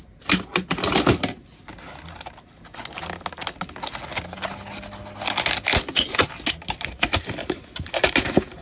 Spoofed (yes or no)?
no